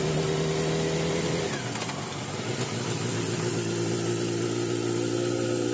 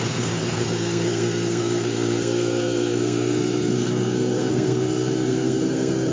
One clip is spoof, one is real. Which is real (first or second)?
first